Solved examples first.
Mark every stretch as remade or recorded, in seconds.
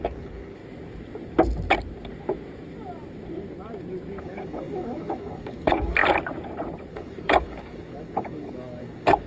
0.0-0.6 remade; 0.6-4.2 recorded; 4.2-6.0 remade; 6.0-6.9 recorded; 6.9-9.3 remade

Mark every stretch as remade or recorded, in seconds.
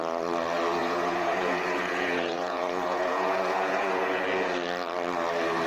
0.0-0.8 recorded; 0.8-4.2 remade; 4.2-5.7 recorded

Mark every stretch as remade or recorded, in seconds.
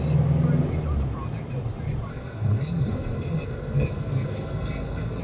0.0-2.1 recorded; 2.1-5.2 remade